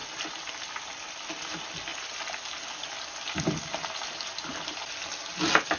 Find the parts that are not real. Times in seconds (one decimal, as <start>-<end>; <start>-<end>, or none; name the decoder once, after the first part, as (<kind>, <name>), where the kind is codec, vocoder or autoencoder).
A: none